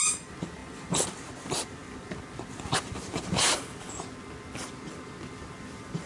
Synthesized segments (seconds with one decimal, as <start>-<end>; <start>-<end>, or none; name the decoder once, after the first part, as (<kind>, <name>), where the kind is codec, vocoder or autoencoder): 0.6-1.2 (vocoder, BigVGAN v2)